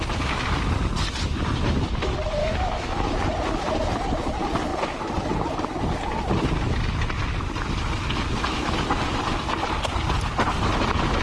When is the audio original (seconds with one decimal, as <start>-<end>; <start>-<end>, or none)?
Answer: 0.0-2.4; 3.1-11.2